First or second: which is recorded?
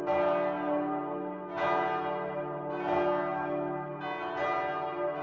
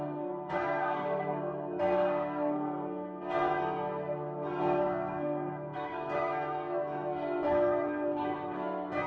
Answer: first